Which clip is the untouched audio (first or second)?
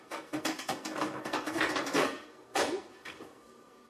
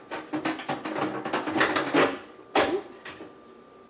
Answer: second